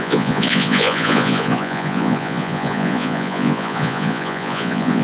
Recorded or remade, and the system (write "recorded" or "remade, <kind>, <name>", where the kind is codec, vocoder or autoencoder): remade, vocoder, Vocos